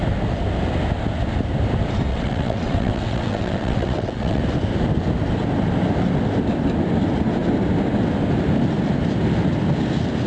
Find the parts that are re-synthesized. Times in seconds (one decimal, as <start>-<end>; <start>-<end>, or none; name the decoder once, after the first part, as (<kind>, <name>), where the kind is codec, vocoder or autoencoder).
2.1-4.4 (vocoder, WaveNeXt)

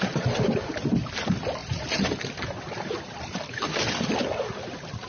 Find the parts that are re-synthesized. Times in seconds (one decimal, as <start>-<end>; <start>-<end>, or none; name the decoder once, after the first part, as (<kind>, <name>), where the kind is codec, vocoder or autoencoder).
none